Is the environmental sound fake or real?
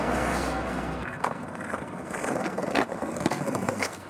fake